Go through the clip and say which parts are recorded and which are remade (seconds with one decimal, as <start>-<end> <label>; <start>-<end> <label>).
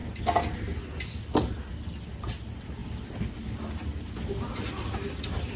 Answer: 0.0-5.6 recorded